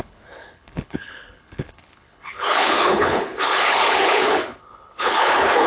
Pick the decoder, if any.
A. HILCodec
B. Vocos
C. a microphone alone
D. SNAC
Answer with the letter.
A